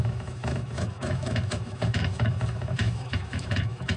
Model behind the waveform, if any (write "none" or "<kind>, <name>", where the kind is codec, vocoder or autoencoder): autoencoder, DAC-VAE